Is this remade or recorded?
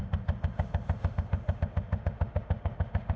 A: remade